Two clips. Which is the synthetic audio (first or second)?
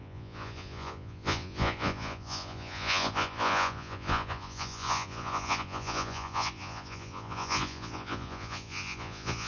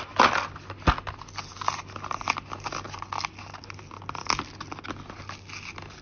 first